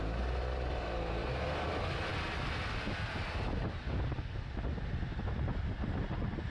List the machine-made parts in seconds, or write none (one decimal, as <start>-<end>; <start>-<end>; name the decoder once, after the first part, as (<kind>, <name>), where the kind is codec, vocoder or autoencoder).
none